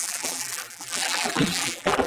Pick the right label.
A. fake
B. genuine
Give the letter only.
A